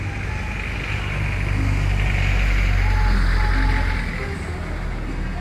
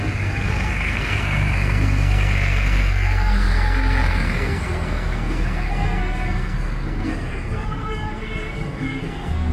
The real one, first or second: first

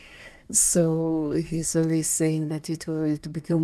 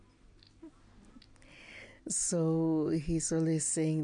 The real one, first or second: second